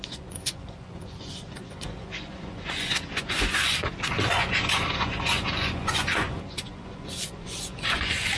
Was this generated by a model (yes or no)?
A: yes